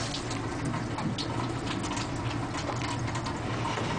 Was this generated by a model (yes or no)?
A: no